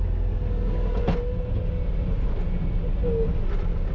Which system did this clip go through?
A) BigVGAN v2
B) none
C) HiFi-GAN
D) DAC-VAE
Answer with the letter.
B